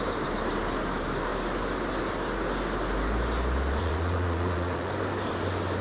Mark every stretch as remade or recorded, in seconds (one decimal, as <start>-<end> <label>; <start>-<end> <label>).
0.0-3.8 recorded; 3.8-4.9 remade; 4.9-5.8 recorded